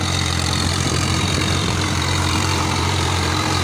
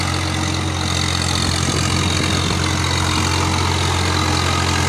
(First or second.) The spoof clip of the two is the first